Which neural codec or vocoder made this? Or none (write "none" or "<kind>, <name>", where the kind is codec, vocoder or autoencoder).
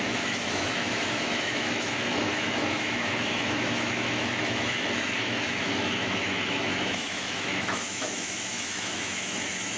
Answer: autoencoder, DAC-VAE